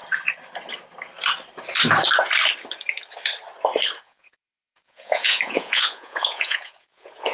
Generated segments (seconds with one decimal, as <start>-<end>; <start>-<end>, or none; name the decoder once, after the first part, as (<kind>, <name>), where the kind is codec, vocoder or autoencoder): 4.0-7.3 (vocoder, Vocos)